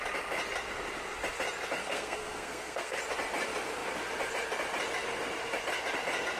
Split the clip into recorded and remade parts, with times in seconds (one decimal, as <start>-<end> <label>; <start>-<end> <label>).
0.0-1.8 recorded; 1.8-3.0 remade; 3.0-6.4 recorded